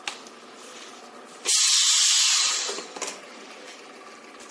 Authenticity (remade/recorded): recorded